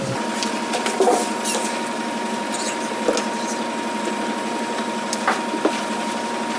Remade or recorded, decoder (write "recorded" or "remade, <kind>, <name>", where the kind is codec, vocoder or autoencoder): recorded